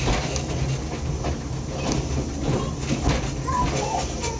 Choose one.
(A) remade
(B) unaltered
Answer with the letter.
B